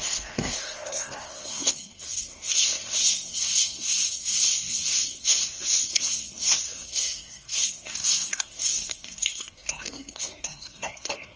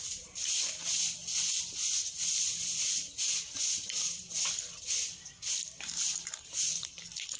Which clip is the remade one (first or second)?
first